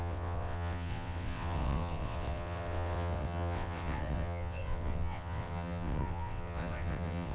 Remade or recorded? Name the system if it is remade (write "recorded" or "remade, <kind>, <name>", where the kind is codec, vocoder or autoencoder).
remade, vocoder, WaveNeXt